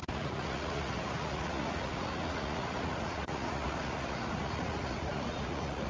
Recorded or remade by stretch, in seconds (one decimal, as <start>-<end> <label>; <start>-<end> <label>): 0.0-5.9 remade